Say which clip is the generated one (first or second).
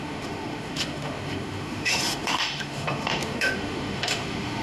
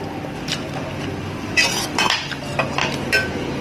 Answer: first